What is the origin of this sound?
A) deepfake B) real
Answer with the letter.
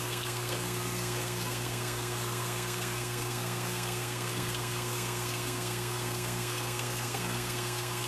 A